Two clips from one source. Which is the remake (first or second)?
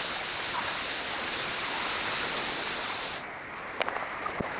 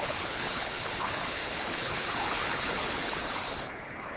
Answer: second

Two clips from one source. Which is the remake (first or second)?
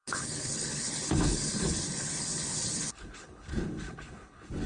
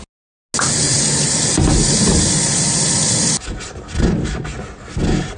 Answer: first